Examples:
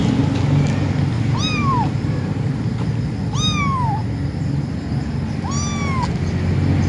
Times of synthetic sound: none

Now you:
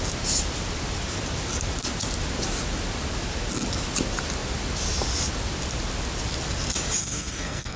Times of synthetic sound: 7.0-7.8 (codec, SNAC)

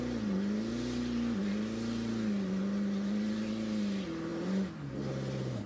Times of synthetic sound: none

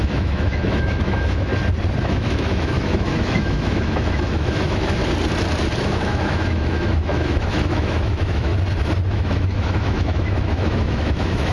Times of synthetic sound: 0.0-1.5 (autoencoder, DAC-VAE); 2.0-5.0; 5.8-8.5; 9.1-11.5

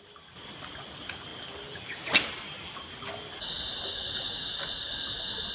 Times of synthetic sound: none

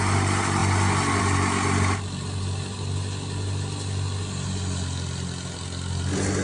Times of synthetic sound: none

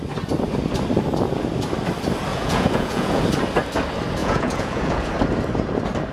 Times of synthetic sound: 2.3-3.2 (vocoder, Vocos); 4.2-5.1